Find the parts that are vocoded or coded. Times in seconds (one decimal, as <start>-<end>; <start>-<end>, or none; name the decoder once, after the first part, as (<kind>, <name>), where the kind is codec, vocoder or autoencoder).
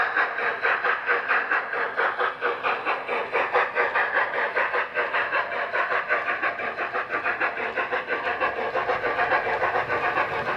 none